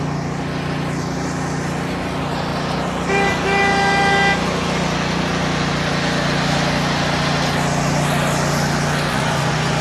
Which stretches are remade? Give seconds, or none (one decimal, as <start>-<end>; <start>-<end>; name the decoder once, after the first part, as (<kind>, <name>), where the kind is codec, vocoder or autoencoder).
9.1-9.8 (vocoder, Vocos)